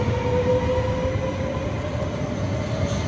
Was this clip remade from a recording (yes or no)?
no